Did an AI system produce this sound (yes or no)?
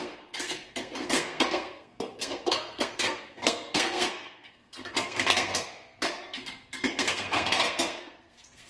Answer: yes